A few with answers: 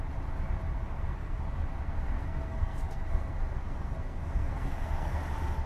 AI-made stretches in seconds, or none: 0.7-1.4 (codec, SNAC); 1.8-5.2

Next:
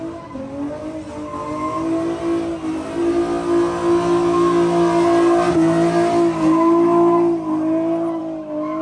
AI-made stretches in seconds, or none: none

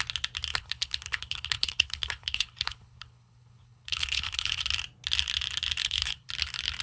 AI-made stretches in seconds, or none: 0.5-4.6 (codec, HILCodec); 5.8-6.3

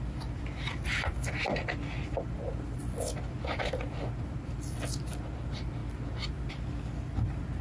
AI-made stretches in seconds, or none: 0.0-5.8 (vocoder, BigVGAN v2); 6.5-7.6

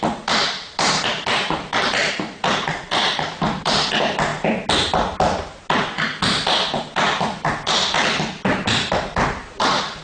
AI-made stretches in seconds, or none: 0.0-4.3 (vocoder, BigVGAN v2); 6.8-10.0

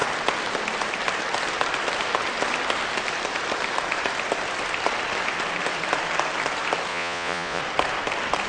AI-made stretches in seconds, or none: 6.9-7.6 (vocoder, Vocos)